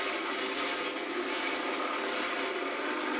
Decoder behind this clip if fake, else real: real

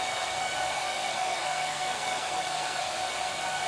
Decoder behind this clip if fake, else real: fake, codec, SNAC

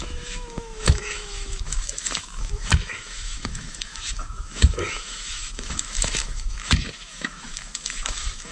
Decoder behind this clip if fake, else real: fake, autoencoder, DAC-VAE